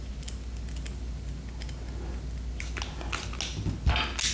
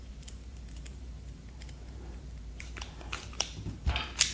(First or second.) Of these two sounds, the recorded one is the first